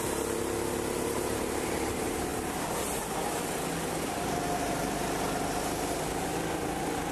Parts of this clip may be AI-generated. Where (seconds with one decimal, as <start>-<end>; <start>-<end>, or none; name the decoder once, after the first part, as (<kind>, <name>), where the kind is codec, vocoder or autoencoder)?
none